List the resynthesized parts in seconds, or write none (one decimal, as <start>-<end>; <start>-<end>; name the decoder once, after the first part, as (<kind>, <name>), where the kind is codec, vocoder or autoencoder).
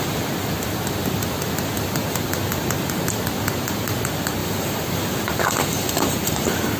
4.4-6.8 (vocoder, BigVGAN v2)